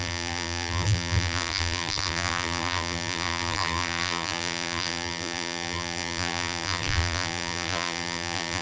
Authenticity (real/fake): fake